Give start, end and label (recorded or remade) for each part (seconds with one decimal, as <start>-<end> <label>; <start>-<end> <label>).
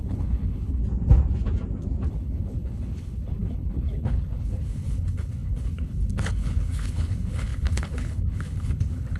0.0-0.8 remade; 0.8-2.1 recorded; 2.1-9.2 remade